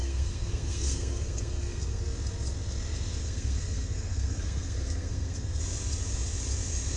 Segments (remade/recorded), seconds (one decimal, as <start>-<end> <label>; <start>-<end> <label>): 0.0-2.0 remade; 2.0-3.2 recorded; 3.2-5.6 remade; 5.6-7.0 recorded